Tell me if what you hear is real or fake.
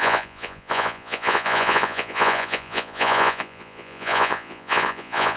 fake